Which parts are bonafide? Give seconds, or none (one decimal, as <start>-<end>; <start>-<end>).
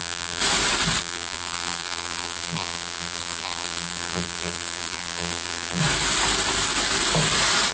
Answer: 0.4-1.0; 5.8-7.7